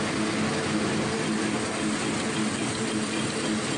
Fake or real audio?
real